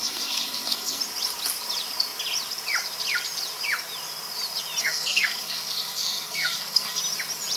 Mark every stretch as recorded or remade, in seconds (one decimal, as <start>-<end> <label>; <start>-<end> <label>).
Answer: 0.0-1.0 remade; 1.0-4.8 recorded; 4.8-7.0 remade; 7.0-7.6 recorded